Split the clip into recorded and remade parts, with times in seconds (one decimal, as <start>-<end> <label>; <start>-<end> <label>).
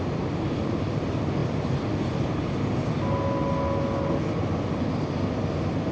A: 0.0-5.9 recorded